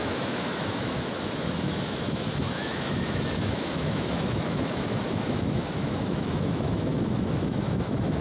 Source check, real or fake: fake